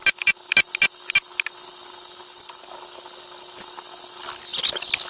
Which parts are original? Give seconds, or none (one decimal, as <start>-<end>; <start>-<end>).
0.0-5.1